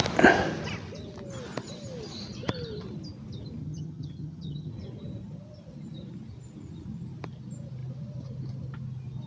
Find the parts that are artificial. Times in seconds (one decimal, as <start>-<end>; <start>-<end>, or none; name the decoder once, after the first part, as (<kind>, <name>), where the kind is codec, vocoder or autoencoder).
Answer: 3.6-4.7 (vocoder, HiFi-GAN)